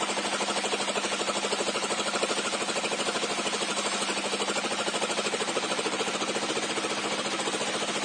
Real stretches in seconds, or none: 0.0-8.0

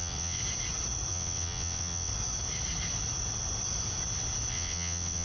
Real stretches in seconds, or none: 0.4-1.1; 2.1-4.5